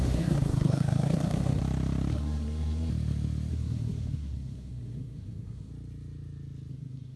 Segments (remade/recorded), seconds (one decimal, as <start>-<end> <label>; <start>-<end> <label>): 0.0-1.6 remade; 1.6-2.1 recorded; 2.1-2.9 remade; 2.9-3.5 recorded; 3.5-5.7 remade; 5.7-6.7 recorded; 6.7-7.2 remade

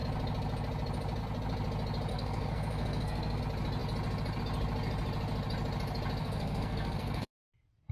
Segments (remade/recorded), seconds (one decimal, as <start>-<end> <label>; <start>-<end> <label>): 0.0-2.1 recorded; 2.1-3.4 remade; 3.4-6.2 recorded; 6.2-7.3 remade; 7.3-7.9 recorded

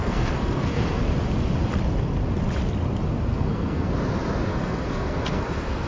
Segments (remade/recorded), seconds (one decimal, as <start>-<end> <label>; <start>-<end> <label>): 0.0-1.0 remade; 1.0-3.3 recorded; 3.3-3.9 remade; 3.9-4.5 recorded; 4.5-5.9 remade

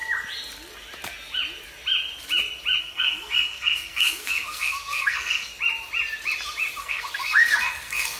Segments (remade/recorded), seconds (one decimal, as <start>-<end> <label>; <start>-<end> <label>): 0.0-2.8 recorded; 2.8-5.5 remade; 5.5-6.8 recorded; 6.8-8.2 remade